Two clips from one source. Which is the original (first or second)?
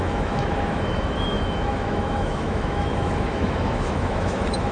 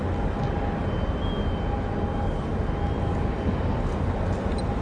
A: second